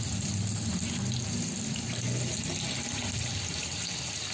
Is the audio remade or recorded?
recorded